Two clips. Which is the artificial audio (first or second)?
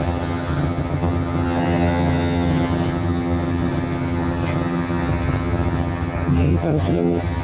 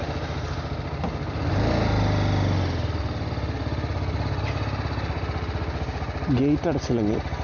first